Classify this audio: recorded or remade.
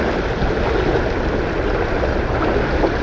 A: recorded